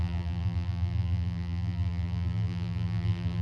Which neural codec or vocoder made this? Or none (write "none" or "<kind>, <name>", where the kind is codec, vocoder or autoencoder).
vocoder, BigVGAN v2